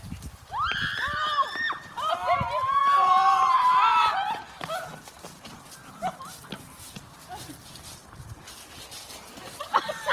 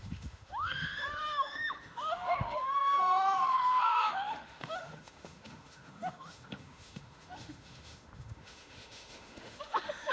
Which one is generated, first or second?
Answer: second